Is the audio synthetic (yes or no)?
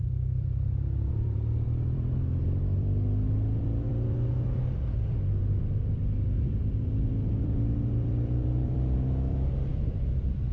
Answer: yes